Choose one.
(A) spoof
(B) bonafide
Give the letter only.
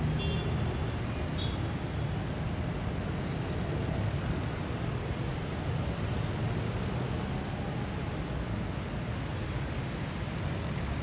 B